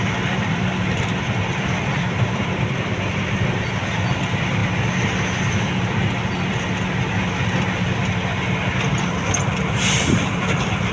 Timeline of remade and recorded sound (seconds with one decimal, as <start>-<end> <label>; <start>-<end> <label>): 0.0-4.6 remade; 4.6-9.0 recorded; 9.0-10.9 remade